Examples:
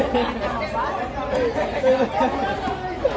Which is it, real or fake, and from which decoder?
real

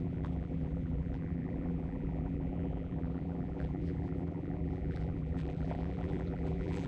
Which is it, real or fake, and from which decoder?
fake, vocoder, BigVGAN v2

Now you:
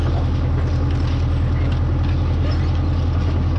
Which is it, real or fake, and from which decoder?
real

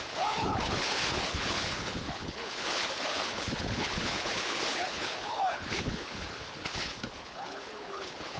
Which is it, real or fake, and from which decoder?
fake, codec, HILCodec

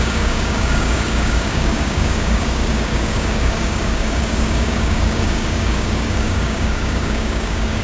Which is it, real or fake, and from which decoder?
fake, codec, DAC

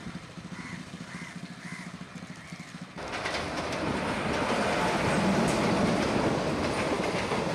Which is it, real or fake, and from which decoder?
real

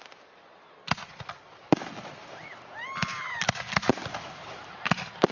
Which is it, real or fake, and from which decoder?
fake, vocoder, BigVGAN v2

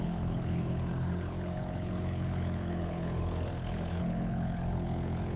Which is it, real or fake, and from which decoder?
fake, codec, HILCodec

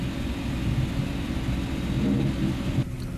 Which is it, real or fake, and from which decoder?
real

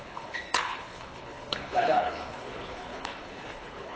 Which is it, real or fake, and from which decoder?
fake, codec, HILCodec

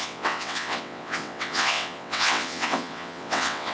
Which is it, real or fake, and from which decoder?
fake, vocoder, WaveNeXt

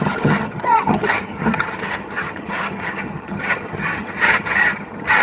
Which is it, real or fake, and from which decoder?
fake, vocoder, HiFi-GAN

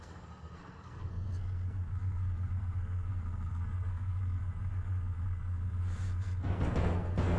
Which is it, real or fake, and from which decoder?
fake, codec, SNAC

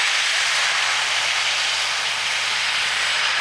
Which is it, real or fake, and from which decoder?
real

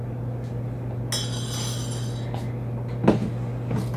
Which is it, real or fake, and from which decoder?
real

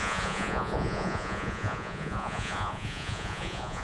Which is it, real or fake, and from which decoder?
fake, vocoder, Vocos